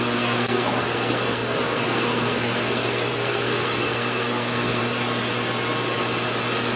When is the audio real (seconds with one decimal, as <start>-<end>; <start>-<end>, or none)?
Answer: 4.8-6.8